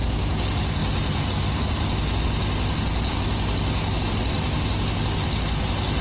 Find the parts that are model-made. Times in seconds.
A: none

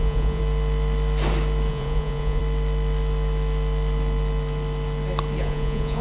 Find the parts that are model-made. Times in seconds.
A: 0.0-0.4 (vocoder, Vocos); 1.7-2.4; 5.4-6.0

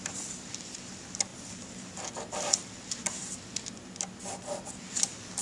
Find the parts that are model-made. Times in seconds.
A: none

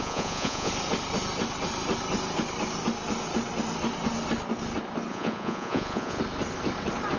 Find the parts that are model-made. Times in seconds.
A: 0.0-0.7 (vocoder, Vocos); 5.1-6.2

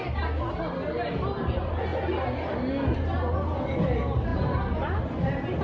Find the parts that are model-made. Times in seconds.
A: none